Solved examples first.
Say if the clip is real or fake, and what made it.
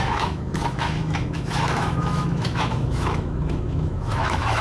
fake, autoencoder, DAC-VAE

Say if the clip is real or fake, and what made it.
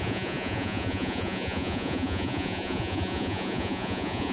fake, vocoder, Vocos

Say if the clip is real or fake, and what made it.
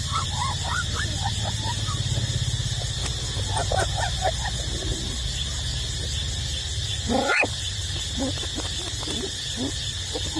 real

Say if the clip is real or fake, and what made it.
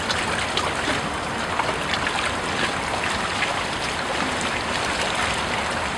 real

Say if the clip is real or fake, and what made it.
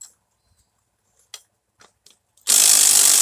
real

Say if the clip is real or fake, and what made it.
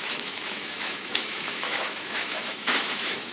fake, autoencoder, DAC-VAE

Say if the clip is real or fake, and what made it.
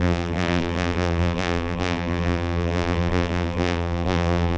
fake, vocoder, BigVGAN v2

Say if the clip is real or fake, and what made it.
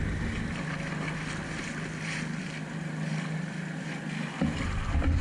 real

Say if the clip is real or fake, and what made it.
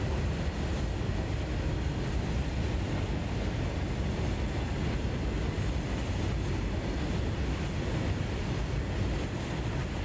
real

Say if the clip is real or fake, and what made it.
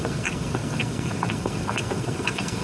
fake, codec, SNAC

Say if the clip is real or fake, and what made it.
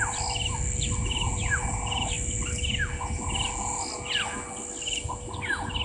real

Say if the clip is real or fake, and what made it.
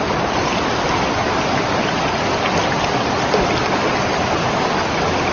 real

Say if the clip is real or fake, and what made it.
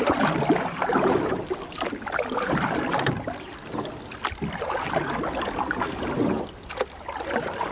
real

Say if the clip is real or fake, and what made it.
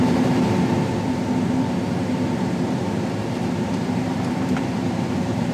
fake, vocoder, BigVGAN v2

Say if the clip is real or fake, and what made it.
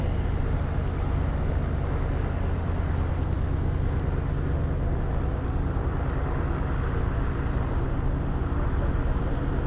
real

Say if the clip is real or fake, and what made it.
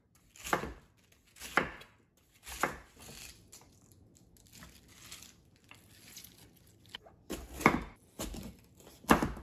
real